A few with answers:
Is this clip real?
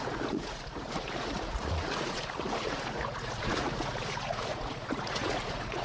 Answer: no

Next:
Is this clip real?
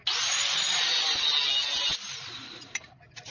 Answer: yes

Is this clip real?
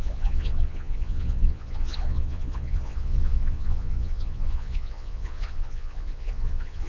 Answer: no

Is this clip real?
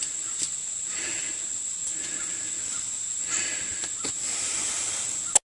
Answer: yes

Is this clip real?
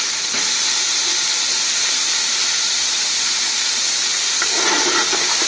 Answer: yes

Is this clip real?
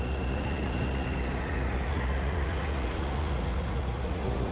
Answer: no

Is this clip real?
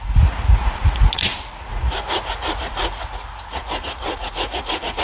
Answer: no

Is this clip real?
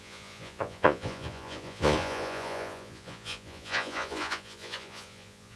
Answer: no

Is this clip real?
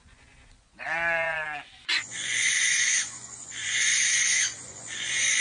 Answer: no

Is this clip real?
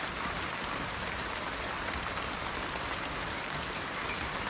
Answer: yes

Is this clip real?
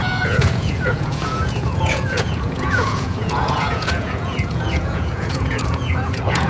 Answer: no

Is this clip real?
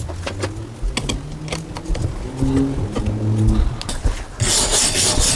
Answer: yes